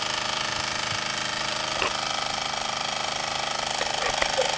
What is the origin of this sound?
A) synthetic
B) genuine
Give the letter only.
B